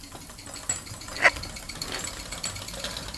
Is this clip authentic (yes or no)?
yes